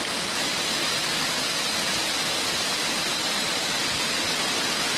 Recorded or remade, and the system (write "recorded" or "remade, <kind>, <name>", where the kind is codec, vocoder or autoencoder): recorded